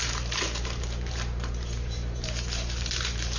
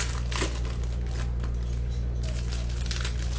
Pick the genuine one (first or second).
second